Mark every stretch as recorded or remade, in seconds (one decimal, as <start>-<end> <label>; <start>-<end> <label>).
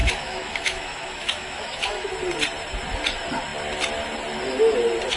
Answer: 0.0-2.1 remade; 2.1-5.2 recorded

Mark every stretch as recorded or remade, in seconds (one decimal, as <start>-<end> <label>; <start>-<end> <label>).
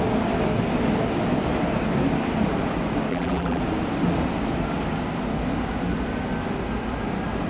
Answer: 0.0-3.1 recorded; 3.1-3.6 remade; 3.6-7.5 recorded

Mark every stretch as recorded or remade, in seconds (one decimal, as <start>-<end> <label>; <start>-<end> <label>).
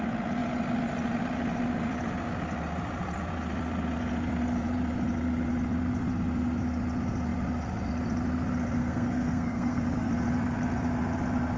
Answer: 0.0-8.8 recorded; 8.8-10.1 remade; 10.1-11.6 recorded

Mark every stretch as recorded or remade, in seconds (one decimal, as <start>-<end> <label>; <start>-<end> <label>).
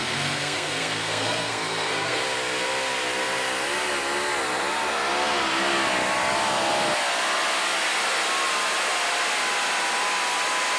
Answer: 0.0-2.2 remade; 2.2-10.8 recorded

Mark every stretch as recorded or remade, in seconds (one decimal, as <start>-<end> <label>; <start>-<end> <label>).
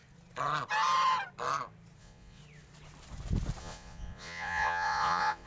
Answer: 0.0-2.0 recorded; 2.0-2.4 remade; 2.4-3.6 recorded; 3.6-5.5 remade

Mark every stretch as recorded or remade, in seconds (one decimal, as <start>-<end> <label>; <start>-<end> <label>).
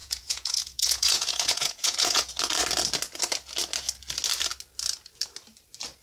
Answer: 0.0-2.3 remade; 2.3-6.0 recorded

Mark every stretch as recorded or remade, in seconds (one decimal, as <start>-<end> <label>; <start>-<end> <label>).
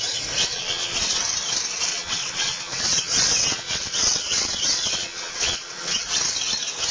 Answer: 0.0-0.4 recorded; 0.4-1.2 remade; 1.2-1.9 recorded; 1.9-6.0 remade; 6.0-6.9 recorded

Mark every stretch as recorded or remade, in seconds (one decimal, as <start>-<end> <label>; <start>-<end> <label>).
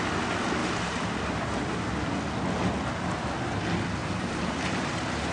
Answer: 0.0-0.6 recorded; 0.6-1.9 remade; 1.9-4.0 recorded; 4.0-4.8 remade; 4.8-5.3 recorded